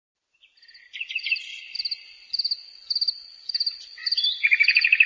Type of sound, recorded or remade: recorded